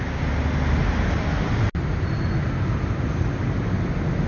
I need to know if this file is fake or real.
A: real